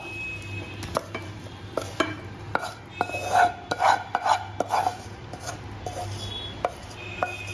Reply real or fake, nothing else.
real